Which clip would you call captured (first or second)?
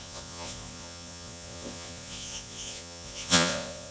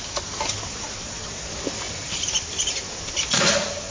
second